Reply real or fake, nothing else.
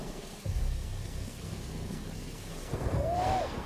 fake